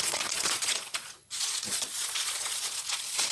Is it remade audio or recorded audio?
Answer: remade